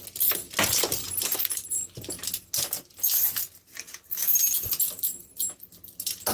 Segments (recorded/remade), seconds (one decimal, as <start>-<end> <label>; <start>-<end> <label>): 0.0-6.3 recorded